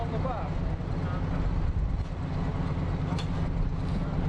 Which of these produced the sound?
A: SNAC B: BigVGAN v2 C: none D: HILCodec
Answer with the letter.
C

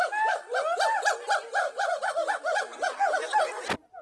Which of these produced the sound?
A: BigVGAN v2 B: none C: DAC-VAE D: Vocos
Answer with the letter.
B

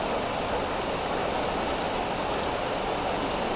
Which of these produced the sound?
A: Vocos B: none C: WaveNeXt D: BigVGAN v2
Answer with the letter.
B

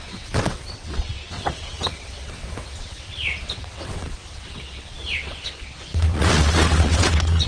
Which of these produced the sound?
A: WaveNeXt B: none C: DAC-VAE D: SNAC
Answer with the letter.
A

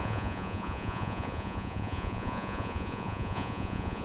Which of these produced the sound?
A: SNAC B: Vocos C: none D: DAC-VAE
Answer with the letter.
B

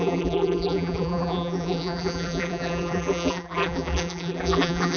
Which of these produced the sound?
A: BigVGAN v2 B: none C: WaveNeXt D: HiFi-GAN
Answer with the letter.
A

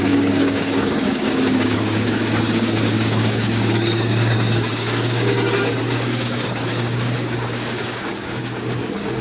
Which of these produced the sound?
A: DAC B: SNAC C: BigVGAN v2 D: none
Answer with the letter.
A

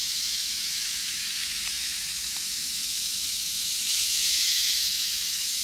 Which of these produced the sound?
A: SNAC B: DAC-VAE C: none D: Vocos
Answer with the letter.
B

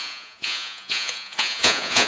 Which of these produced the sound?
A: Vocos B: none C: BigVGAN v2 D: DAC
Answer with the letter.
A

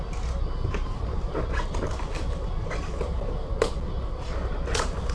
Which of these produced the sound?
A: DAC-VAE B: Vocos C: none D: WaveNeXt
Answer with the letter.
C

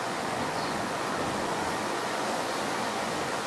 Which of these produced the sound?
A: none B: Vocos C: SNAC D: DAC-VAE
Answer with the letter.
B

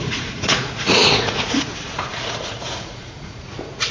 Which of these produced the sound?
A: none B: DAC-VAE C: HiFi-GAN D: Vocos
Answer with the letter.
D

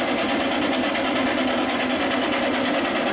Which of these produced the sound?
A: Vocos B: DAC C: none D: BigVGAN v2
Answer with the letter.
C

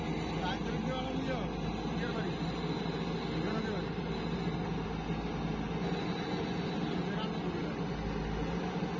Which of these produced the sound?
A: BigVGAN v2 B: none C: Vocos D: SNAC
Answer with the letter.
B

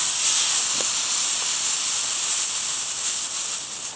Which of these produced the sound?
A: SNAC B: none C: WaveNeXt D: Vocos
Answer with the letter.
B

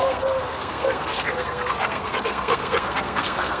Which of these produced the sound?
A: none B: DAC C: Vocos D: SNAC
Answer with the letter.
D